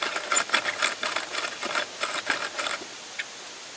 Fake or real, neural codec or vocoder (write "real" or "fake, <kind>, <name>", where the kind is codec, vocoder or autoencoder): real